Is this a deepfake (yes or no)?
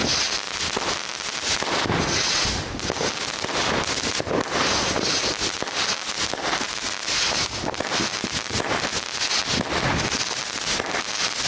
no